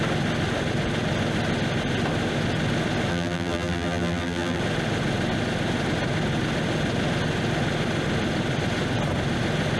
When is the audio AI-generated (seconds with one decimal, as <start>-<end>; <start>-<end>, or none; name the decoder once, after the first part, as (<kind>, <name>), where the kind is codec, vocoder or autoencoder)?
3.1-4.6 (vocoder, BigVGAN v2)